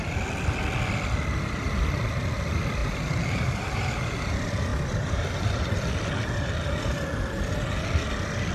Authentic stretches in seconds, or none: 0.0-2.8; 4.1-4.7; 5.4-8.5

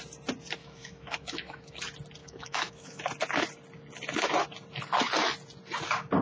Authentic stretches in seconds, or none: 0.0-0.6; 1.8-2.2; 3.0-6.2